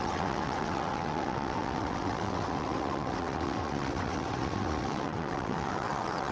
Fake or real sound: fake